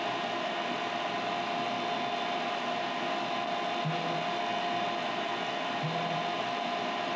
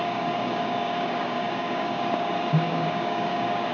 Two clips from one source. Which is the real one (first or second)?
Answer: first